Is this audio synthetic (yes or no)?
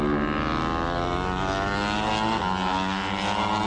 no